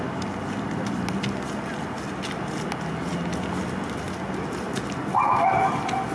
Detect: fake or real real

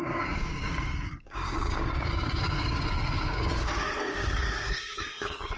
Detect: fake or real fake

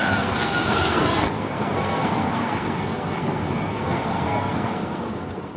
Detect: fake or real fake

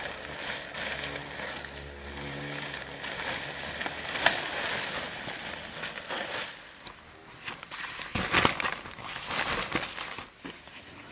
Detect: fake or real real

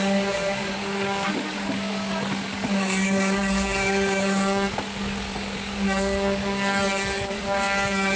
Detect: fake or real fake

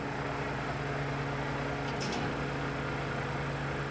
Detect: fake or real real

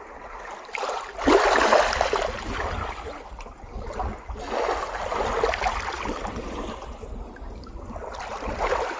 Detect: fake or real real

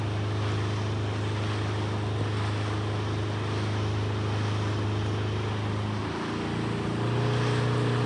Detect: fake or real real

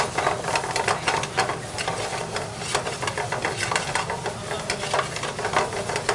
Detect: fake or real real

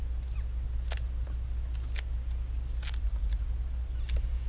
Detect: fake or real real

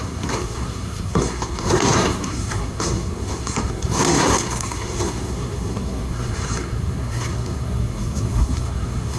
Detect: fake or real fake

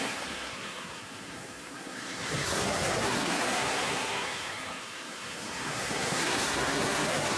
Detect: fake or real fake